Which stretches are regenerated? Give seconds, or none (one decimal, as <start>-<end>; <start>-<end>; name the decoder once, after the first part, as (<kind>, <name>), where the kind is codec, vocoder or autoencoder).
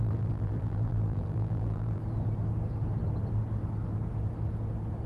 0.0-2.0 (vocoder, BigVGAN v2)